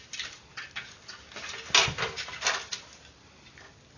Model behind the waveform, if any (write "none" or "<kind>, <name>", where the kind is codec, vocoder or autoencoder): none